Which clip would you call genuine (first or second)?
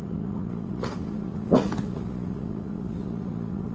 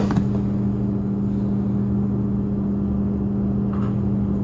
second